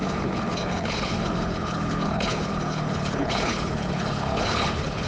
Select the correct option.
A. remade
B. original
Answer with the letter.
A